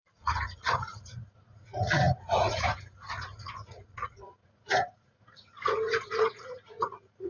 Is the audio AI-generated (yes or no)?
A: yes